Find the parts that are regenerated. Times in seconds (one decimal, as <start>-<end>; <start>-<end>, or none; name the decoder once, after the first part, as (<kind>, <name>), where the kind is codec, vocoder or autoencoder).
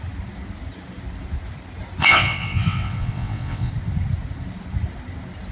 2.0-3.7 (vocoder, WaveNeXt)